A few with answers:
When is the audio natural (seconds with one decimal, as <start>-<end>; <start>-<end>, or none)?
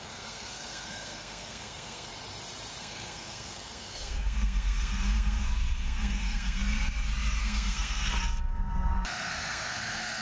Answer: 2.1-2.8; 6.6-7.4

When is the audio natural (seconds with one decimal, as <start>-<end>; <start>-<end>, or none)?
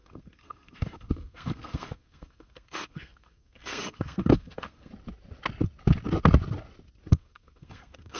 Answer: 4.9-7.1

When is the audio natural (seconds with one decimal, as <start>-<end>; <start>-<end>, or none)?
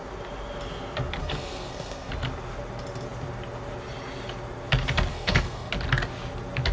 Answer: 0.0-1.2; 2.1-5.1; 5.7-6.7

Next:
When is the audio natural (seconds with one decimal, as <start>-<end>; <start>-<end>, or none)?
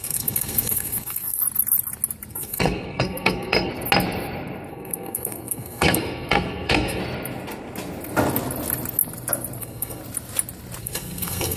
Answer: 1.4-2.3; 3.7-4.7; 7.0-9.6; 10.0-10.8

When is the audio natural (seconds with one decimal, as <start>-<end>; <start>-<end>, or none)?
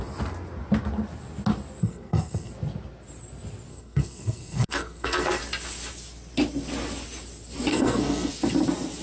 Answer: 0.0-1.8; 2.5-3.7; 5.4-7.7; 8.3-9.0